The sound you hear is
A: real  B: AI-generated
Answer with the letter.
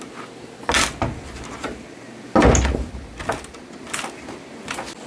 A